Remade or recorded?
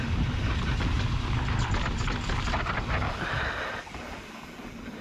recorded